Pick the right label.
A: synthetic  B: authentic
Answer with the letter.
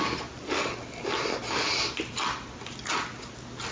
B